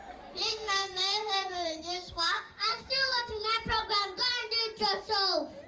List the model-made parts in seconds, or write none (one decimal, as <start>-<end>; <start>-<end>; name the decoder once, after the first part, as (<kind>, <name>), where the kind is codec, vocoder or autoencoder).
0.5-3.7 (codec, SNAC)

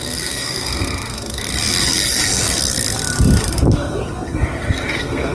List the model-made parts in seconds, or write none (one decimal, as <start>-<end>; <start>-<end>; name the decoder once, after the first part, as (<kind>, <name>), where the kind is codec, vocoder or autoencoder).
0.0-1.5 (codec, SNAC); 4.7-5.3

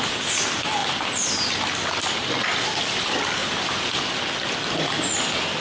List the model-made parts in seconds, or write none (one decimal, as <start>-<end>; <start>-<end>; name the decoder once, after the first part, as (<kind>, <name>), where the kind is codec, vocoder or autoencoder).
none